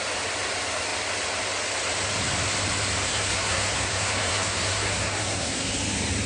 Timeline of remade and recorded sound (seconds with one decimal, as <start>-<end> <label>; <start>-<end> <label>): 0.0-3.1 recorded; 3.1-5.7 remade; 5.7-6.3 recorded